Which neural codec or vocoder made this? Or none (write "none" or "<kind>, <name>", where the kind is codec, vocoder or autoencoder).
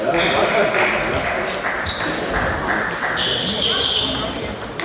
none